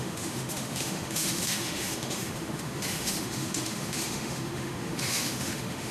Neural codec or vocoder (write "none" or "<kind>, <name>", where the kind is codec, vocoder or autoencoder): autoencoder, DAC-VAE